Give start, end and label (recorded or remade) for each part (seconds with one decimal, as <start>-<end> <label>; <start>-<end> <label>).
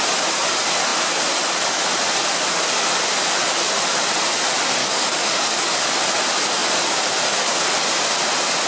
0.0-4.8 recorded; 4.8-5.8 remade; 5.8-8.7 recorded